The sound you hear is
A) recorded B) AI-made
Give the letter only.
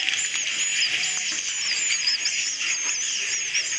A